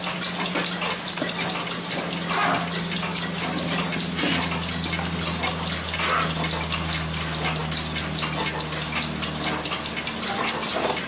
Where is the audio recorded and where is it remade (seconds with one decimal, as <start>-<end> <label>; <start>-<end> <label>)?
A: 0.0-11.1 recorded